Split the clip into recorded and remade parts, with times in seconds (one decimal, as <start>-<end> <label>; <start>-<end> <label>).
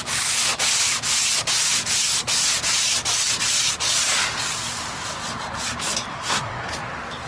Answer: 0.0-6.1 recorded; 6.1-6.7 remade; 6.7-7.3 recorded